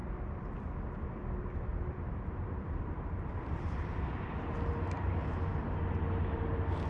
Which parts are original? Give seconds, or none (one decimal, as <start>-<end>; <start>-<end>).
4.1-6.9